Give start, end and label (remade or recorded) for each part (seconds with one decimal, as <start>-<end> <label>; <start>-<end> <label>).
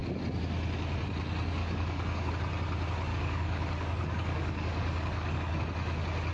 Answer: 0.0-1.6 recorded; 1.6-2.3 remade; 2.3-3.1 recorded; 3.1-5.6 remade; 5.6-6.3 recorded